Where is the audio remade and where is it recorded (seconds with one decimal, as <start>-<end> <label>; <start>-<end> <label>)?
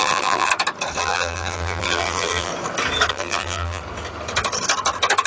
0.0-0.5 remade; 0.5-1.0 recorded; 1.0-2.5 remade; 2.5-3.1 recorded; 3.1-3.8 remade; 3.8-5.3 recorded